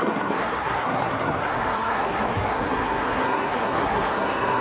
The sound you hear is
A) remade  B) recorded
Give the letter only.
A